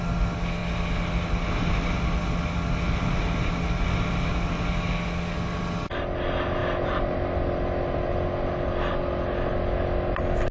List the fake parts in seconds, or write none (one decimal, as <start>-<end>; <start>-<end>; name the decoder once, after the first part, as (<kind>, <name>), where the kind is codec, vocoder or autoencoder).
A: none